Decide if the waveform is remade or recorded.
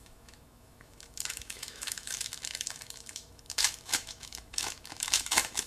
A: remade